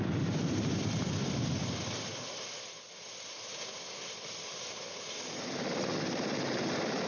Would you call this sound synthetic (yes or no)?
no